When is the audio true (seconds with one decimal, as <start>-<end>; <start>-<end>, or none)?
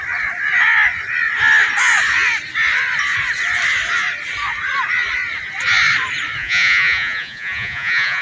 0.0-6.4